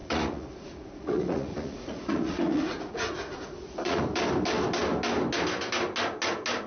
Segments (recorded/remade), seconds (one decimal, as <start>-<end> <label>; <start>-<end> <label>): 0.0-4.0 remade; 4.0-6.7 recorded